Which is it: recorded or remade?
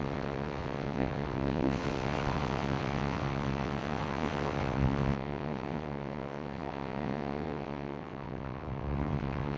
remade